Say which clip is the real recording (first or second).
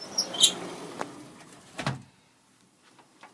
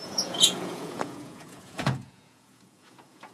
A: first